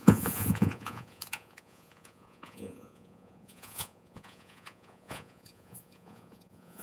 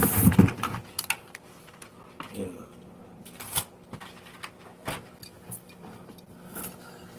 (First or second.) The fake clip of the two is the first